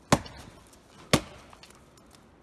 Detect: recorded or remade recorded